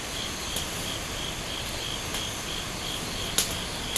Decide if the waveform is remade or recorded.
recorded